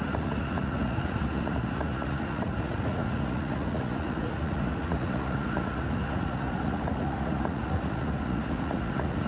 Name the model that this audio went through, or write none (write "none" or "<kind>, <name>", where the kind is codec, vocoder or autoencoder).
vocoder, Vocos